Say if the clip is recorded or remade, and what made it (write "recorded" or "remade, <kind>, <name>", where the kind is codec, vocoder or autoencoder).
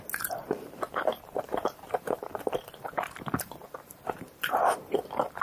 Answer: remade, vocoder, BigVGAN v2